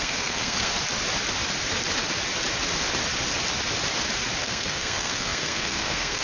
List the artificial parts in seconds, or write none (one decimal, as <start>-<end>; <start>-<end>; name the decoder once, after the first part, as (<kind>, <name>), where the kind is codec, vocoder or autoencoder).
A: 0.0-0.7 (codec, SNAC); 4.4-6.2